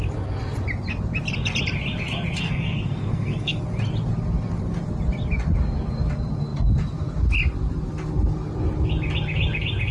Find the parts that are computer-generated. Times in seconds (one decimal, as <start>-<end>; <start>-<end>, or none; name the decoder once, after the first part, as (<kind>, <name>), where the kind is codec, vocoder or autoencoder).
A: 2.4-3.6 (codec, SNAC)